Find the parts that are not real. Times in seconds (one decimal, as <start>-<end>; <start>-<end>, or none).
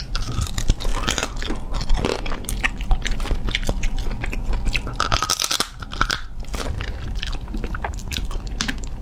none